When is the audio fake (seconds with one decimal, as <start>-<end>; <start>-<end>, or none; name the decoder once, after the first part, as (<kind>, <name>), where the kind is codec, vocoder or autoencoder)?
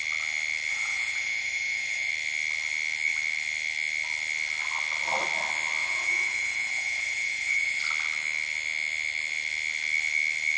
0.7-2.1 (vocoder, Vocos); 5.8-7.8